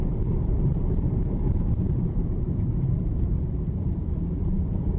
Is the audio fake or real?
fake